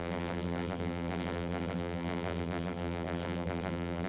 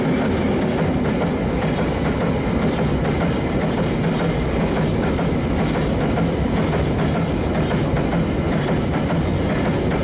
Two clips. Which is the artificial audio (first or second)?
first